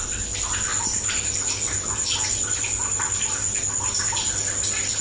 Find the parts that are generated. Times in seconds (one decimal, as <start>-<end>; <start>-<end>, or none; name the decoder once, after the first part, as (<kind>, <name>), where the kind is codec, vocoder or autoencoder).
none